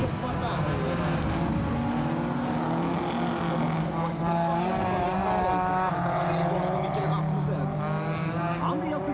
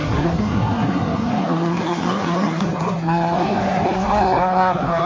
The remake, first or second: second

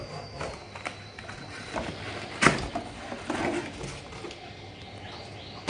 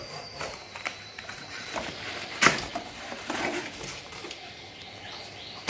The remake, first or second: second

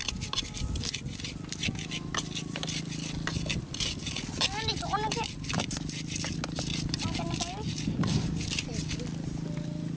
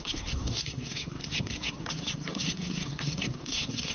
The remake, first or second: second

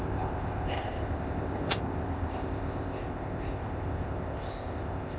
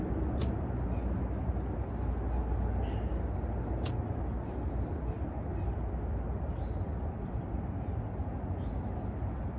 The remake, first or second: first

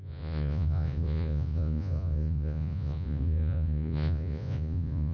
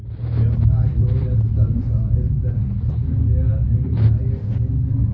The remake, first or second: first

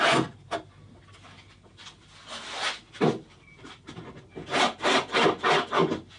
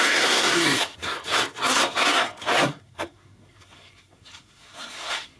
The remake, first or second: second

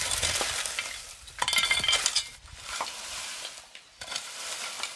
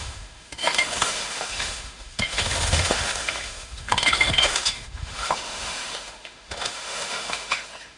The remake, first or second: second